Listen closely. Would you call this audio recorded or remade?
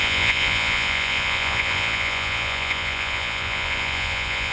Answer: remade